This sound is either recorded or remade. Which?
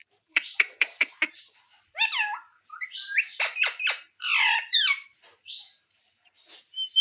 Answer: remade